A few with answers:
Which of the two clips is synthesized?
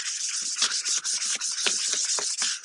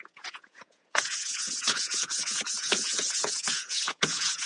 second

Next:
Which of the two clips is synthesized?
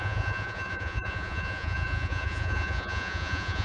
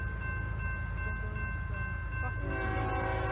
first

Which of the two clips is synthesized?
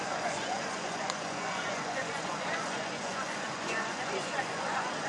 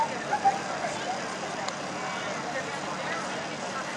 first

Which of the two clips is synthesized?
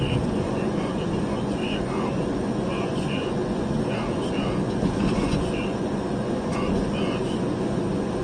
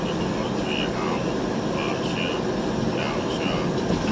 first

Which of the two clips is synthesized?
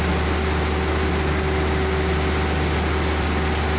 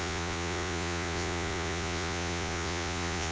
second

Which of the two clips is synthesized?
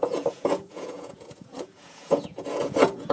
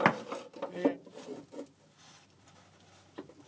first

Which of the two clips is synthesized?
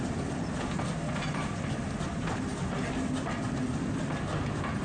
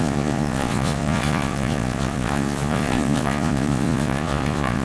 second